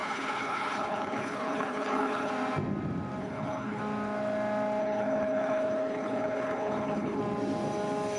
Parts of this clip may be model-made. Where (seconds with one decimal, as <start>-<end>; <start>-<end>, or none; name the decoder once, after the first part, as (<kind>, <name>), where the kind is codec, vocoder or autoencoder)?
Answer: 0.0-2.3 (codec, HILCodec); 3.2-3.8; 4.8-7.2